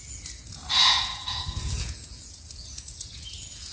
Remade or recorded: remade